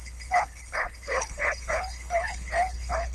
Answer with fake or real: fake